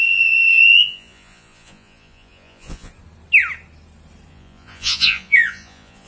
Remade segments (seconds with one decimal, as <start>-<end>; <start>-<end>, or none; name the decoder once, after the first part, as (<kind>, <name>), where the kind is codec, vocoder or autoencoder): 0.0-2.9 (vocoder, Vocos); 4.3-6.1